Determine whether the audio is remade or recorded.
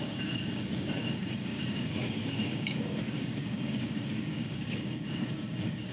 remade